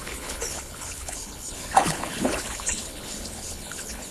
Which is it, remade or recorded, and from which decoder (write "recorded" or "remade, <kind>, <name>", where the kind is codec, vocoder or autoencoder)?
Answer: remade, codec, HILCodec